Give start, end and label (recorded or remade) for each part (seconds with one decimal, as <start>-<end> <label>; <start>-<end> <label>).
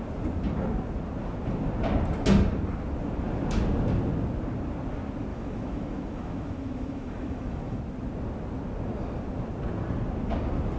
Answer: 0.0-5.3 recorded; 5.3-7.8 remade; 7.8-10.8 recorded